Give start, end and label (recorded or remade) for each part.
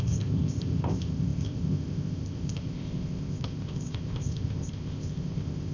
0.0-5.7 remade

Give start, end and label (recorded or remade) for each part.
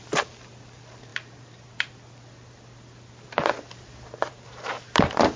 0.0-5.4 recorded